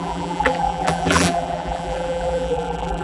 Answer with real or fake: fake